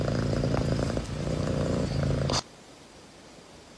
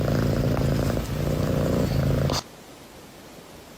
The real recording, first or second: second